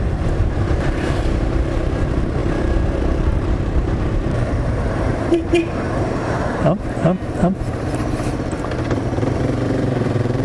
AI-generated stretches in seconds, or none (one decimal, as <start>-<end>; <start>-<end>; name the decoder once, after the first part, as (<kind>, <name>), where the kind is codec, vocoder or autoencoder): 0.0-10.4 (vocoder, BigVGAN v2)